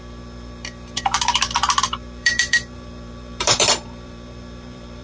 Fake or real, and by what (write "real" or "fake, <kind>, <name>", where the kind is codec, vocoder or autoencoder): fake, vocoder, BigVGAN v2